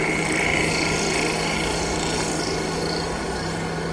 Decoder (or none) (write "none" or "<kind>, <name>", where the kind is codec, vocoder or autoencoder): none